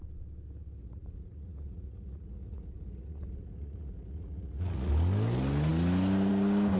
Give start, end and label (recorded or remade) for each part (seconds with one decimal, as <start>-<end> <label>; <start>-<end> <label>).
0.0-0.8 recorded; 0.8-4.9 remade; 4.9-6.8 recorded